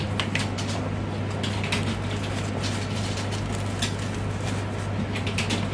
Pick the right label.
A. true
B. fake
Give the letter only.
A